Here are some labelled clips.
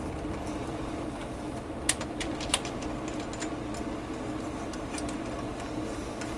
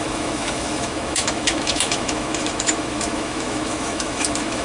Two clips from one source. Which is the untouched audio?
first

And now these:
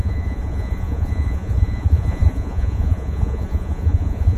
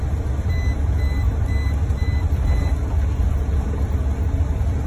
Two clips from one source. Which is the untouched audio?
second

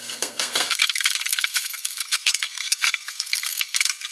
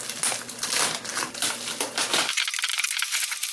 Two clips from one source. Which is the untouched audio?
second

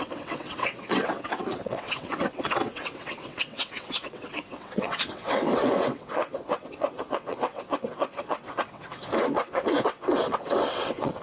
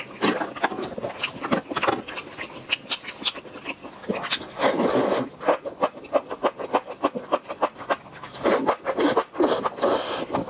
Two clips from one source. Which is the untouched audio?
second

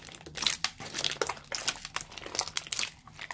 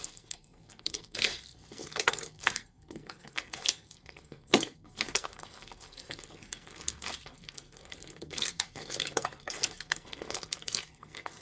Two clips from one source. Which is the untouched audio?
first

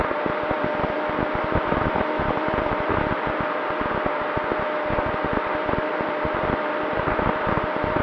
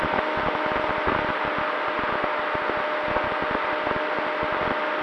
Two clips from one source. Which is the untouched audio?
second